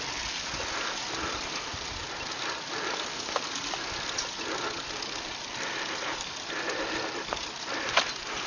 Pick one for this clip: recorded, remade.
recorded